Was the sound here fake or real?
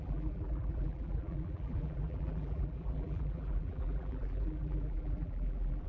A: fake